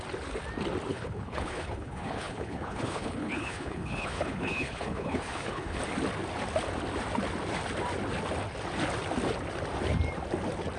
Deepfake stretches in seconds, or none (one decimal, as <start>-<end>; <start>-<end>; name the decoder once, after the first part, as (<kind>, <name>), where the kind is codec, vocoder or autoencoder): 0.9-5.8 (codec, HILCodec)